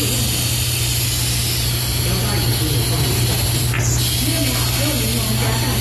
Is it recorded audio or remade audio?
recorded